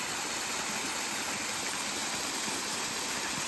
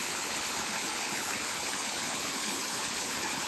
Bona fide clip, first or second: first